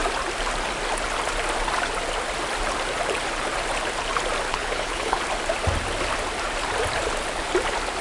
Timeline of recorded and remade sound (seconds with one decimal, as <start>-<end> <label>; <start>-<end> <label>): 0.0-4.5 recorded; 4.5-5.2 remade; 5.2-8.0 recorded